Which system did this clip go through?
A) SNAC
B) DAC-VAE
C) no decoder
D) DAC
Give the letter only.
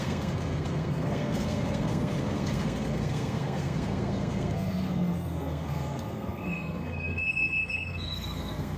A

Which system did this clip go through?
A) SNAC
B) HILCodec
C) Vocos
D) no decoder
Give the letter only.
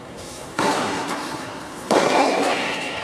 A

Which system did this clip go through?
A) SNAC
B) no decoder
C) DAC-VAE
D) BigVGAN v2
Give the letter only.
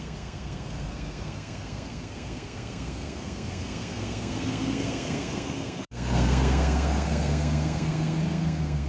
A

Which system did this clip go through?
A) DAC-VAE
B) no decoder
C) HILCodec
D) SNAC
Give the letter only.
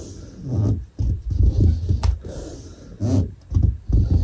B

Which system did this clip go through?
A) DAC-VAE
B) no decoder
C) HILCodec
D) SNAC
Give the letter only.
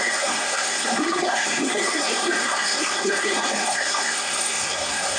D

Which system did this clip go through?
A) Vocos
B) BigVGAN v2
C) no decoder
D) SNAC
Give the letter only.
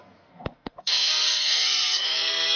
D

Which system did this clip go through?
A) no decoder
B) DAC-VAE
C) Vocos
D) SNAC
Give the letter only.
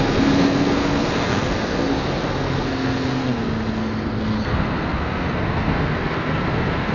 D